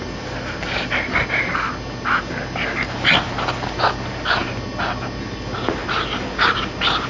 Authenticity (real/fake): real